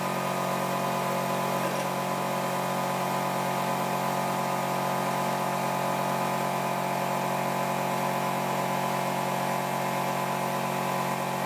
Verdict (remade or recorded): recorded